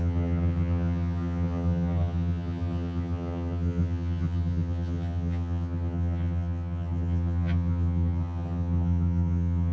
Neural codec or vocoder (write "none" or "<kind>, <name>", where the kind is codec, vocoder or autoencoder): vocoder, HiFi-GAN